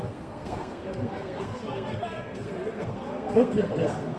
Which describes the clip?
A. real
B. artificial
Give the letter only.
B